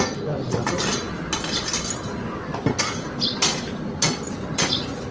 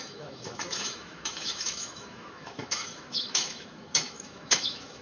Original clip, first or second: first